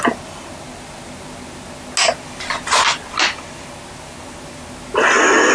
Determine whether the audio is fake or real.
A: real